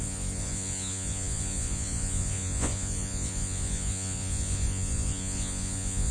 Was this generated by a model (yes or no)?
yes